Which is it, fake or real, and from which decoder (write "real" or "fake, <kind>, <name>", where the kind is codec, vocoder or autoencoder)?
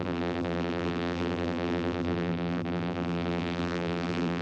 fake, vocoder, BigVGAN v2